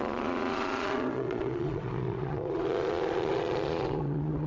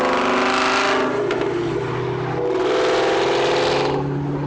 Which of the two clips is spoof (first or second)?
first